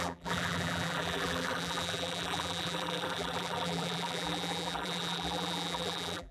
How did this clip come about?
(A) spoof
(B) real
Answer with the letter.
A